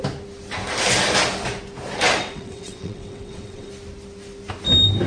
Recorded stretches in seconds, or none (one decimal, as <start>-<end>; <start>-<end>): 0.0-2.2; 3.7-5.1